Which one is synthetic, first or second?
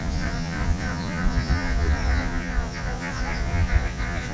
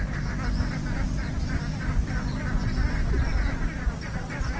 first